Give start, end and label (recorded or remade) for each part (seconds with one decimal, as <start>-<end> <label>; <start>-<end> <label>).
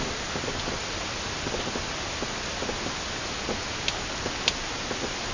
0.0-5.3 recorded